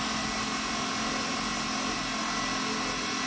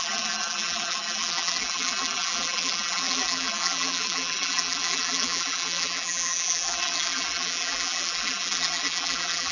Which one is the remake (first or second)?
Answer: second